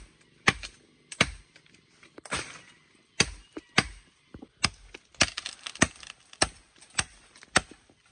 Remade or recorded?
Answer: recorded